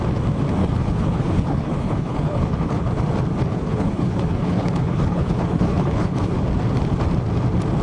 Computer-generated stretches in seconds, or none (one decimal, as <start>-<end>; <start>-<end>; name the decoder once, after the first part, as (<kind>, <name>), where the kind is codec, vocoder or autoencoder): 0.6-2.9 (codec, HILCodec); 3.5-6.4